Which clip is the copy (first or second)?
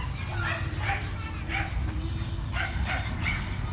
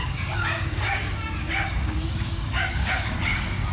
second